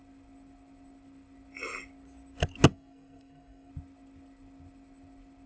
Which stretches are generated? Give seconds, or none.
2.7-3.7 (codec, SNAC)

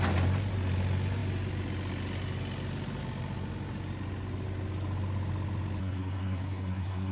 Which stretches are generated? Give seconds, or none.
5.8-7.1 (codec, SNAC)